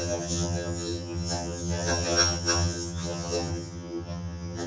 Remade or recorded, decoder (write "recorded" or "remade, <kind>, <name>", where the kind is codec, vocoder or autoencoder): remade, vocoder, HiFi-GAN